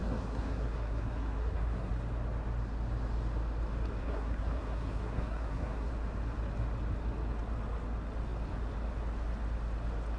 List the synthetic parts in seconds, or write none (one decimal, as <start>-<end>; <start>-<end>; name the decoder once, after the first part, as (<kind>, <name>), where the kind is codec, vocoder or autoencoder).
0.0-1.9 (codec, SNAC); 4.0-5.9